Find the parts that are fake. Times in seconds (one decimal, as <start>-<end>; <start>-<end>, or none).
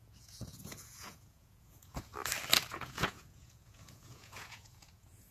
0.0-2.1; 2.7-5.3